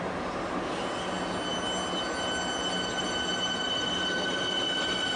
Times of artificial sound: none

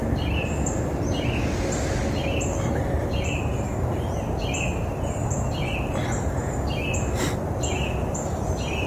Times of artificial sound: 5.2-6.3 (vocoder, BigVGAN v2)

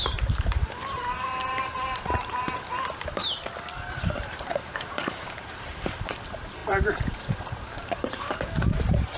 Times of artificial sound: 0.0-3.2 (vocoder, BigVGAN v2); 3.9-9.2

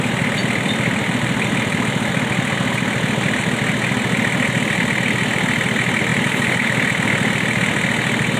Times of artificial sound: 0.4-2.1 (vocoder, BigVGAN v2); 6.1-7.6

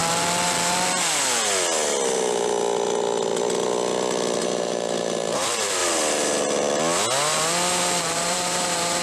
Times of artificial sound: 4.4-5.8 (vocoder, BigVGAN v2); 8.0-9.0